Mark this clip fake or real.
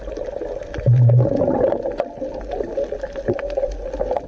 real